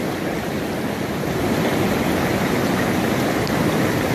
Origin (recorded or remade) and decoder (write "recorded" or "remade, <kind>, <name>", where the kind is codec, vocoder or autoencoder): recorded